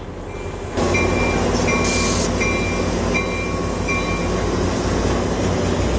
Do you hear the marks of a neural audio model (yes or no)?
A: no